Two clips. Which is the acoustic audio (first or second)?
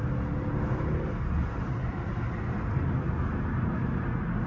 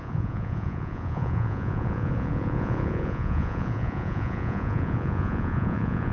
first